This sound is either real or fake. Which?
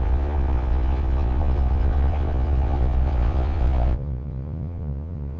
fake